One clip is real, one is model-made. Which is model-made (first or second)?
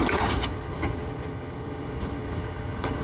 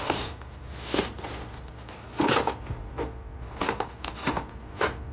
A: first